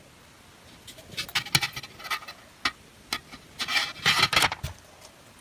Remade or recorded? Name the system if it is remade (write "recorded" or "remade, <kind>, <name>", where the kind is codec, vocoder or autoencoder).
recorded